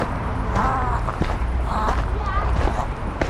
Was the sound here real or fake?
fake